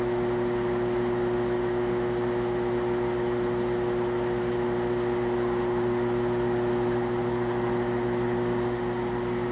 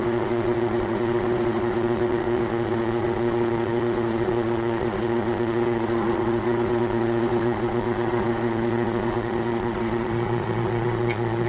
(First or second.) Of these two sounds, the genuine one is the first